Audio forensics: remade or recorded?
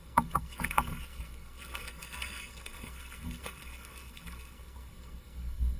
remade